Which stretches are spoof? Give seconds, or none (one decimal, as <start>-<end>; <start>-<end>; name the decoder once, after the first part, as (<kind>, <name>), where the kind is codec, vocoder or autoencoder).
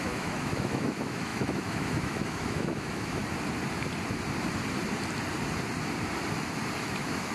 0.0-3.2 (autoencoder, DAC-VAE); 6.8-7.3